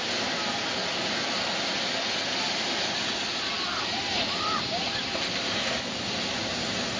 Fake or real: real